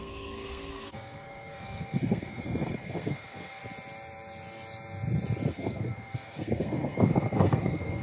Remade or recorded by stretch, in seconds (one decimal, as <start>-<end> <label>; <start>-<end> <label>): 0.0-3.6 remade; 3.6-5.5 recorded; 5.5-8.0 remade